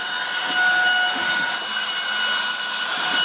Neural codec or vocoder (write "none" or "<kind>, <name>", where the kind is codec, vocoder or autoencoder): none